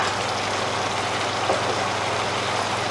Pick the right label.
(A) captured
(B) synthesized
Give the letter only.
A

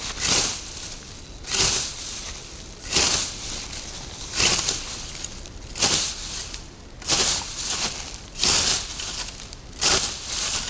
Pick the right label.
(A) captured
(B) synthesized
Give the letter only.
A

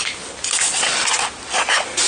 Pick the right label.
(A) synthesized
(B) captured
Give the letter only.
B